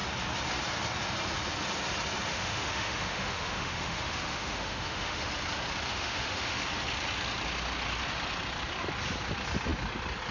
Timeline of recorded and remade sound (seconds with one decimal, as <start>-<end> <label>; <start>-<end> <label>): 0.0-2.3 recorded; 2.3-5.3 remade; 5.3-5.9 recorded; 5.9-6.6 remade; 6.6-10.3 recorded

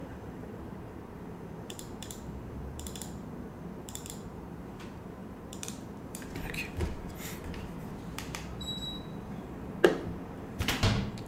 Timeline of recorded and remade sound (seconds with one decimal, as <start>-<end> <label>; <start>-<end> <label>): 0.0-11.3 remade

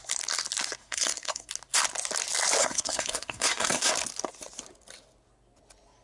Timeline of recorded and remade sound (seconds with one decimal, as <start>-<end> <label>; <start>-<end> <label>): 0.0-0.8 recorded; 0.8-1.5 remade; 1.5-2.6 recorded; 2.6-3.9 remade; 3.9-6.0 recorded

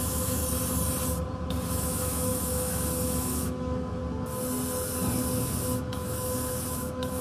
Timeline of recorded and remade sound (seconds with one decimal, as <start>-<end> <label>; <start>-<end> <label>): 0.0-0.4 remade; 0.4-1.7 recorded; 1.7-4.0 remade; 4.0-5.4 recorded; 5.4-7.2 remade

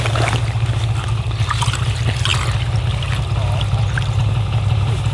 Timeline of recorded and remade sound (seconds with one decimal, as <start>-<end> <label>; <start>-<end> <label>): 0.0-5.1 recorded

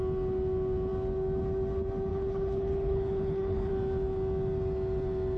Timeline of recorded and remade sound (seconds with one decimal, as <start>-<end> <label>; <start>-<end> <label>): 0.0-2.1 recorded; 2.1-3.7 remade; 3.7-5.4 recorded

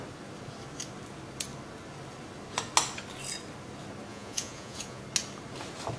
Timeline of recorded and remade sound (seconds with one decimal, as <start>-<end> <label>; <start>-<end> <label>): 0.0-4.1 recorded; 4.1-5.0 remade; 5.0-6.0 recorded

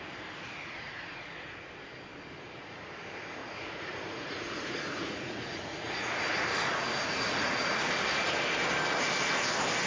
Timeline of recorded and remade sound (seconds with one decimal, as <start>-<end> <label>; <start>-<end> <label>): 0.0-0.5 recorded; 0.5-1.7 remade; 1.7-3.4 recorded; 3.4-7.9 remade; 7.9-9.9 recorded